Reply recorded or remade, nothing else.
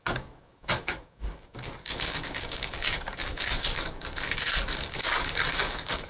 remade